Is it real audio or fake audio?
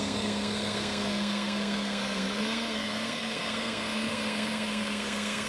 fake